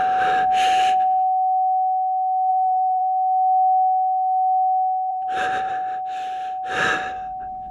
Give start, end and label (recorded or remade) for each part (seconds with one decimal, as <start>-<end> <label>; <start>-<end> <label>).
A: 0.0-2.5 recorded; 2.5-3.0 remade; 3.0-5.1 recorded; 5.1-5.7 remade; 5.7-7.7 recorded